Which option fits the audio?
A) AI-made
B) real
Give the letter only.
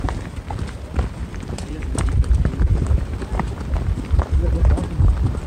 B